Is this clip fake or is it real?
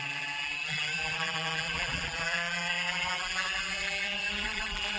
fake